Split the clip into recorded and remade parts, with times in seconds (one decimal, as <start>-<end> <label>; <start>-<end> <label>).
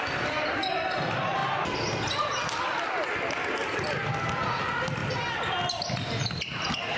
0.0-7.0 recorded